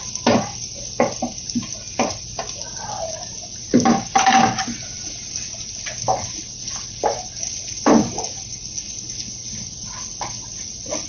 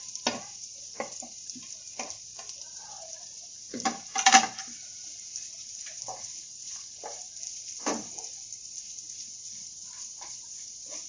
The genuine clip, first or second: first